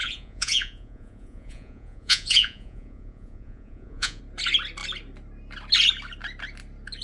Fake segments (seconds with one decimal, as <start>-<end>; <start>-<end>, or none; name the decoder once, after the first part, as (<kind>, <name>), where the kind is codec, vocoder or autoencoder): 0.0-4.2 (vocoder, Vocos)